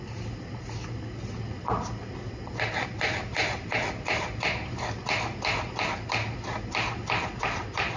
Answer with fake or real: real